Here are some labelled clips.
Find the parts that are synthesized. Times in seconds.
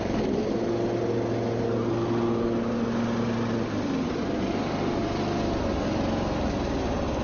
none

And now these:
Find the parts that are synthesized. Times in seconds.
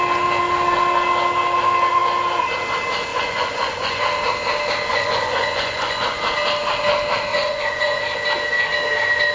3.1-4.0 (vocoder, Vocos); 4.9-6.2; 7.3-8.0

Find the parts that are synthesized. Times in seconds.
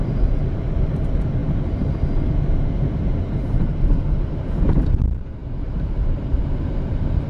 5.4-6.4 (vocoder, BigVGAN v2)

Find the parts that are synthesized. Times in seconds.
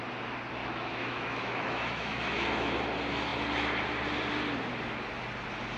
0.6-2.8 (autoencoder, DAC-VAE)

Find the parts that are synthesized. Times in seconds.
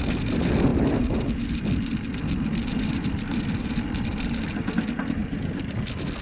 2.1-4.4 (vocoder, BigVGAN v2); 5.2-6.2